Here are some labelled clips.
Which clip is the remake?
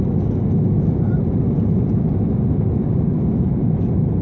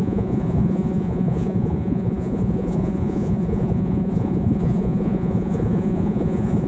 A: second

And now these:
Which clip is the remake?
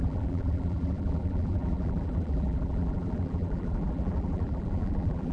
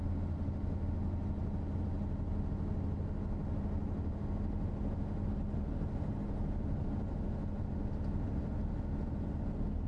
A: first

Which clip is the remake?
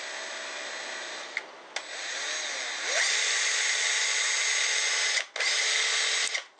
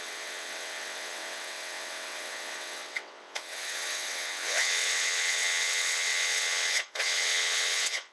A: second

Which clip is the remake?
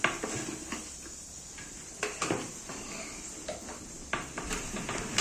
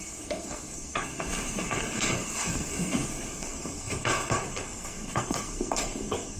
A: second